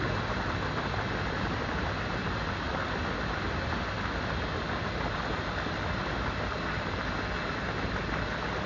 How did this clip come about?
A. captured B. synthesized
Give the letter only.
A